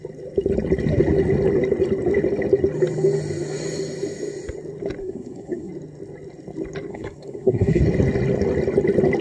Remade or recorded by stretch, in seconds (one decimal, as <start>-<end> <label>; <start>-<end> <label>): 0.0-5.0 recorded; 5.0-5.7 remade; 5.7-6.9 recorded; 6.9-7.8 remade; 7.8-9.2 recorded